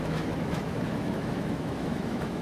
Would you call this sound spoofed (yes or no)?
yes